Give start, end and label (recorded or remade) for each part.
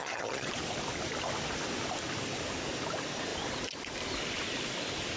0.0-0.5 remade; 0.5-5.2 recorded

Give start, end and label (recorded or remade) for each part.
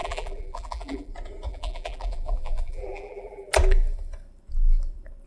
0.0-1.1 remade; 1.1-1.5 recorded; 1.5-3.5 remade; 3.5-5.3 recorded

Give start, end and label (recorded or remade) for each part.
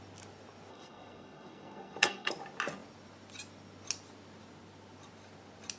0.0-0.7 recorded; 0.7-2.3 remade; 2.3-5.8 recorded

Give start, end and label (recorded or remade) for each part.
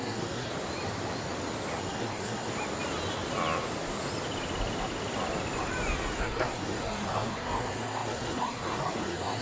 0.0-0.5 remade; 0.5-1.8 recorded; 1.8-2.5 remade; 2.5-6.2 recorded; 6.2-9.4 remade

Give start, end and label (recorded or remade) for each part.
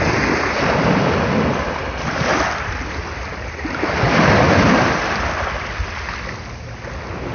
0.0-7.3 recorded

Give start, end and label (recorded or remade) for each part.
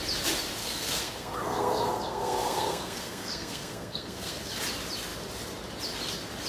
0.0-0.6 recorded; 0.6-4.5 remade; 4.5-6.5 recorded